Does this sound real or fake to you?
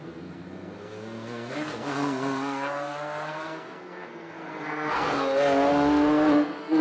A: fake